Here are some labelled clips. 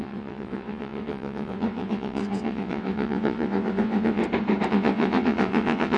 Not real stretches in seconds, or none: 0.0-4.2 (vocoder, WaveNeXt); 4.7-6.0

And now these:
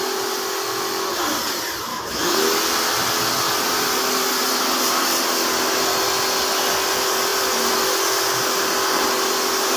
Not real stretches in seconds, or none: 1.9-2.6 (autoencoder, DAC-VAE)